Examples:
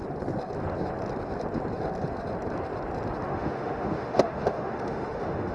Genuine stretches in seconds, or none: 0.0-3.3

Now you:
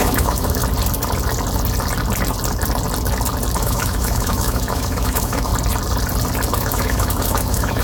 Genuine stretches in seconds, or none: 0.6-3.6; 5.5-6.5

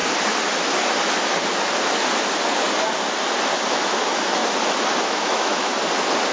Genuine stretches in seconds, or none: 0.0-3.7; 4.4-5.0; 5.7-6.3

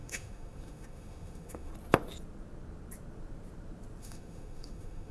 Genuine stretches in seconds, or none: 1.7-4.0

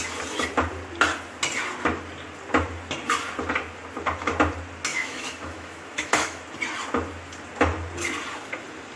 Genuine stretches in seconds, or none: 0.0-4.9; 6.4-9.0